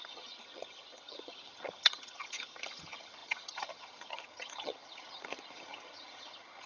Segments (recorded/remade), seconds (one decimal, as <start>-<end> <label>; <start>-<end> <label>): 0.0-6.7 remade